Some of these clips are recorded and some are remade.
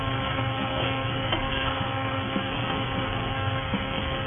remade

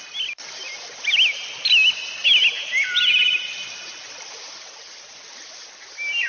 recorded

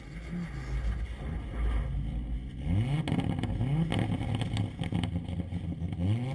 recorded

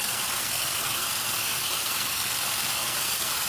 remade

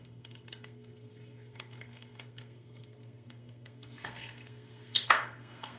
remade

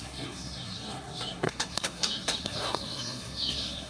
remade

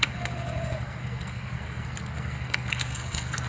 remade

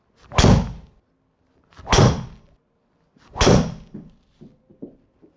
recorded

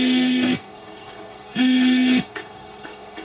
remade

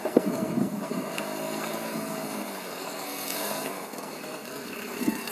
remade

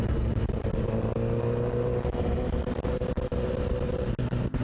recorded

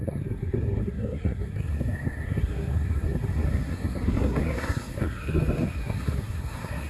remade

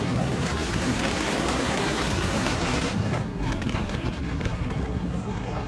remade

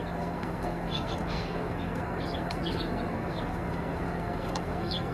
remade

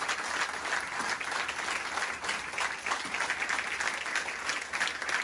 recorded